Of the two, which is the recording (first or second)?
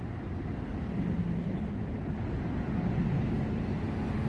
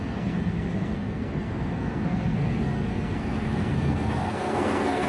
first